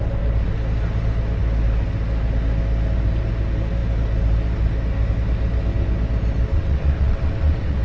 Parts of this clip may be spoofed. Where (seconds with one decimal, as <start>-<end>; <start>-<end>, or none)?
6.5-7.8